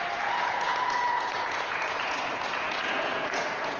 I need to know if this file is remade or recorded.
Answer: remade